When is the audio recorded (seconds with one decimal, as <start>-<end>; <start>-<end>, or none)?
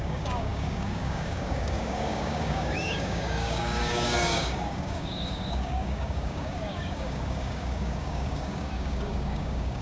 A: none